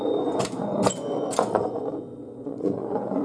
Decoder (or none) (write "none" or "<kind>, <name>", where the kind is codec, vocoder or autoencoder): vocoder, Vocos